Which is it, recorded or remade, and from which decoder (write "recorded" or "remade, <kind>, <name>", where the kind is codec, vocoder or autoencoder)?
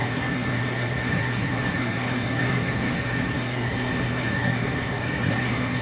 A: remade, codec, SNAC